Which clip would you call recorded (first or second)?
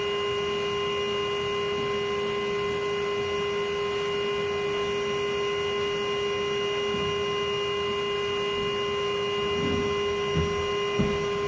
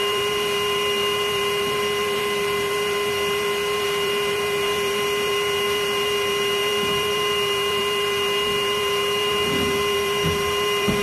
first